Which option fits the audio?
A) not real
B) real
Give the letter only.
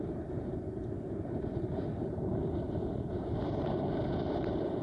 A